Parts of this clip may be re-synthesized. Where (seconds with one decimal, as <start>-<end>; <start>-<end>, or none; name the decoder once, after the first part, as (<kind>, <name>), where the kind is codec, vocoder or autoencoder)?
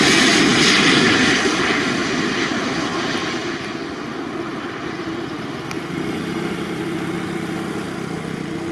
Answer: 4.5-6.8 (vocoder, BigVGAN v2)